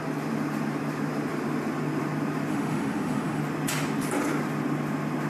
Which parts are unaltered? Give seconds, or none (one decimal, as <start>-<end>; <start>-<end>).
0.0-2.5; 3.4-5.3